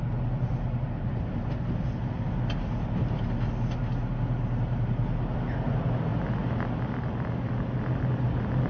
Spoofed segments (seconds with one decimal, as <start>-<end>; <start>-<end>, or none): none